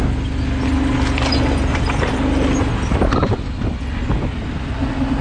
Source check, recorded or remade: recorded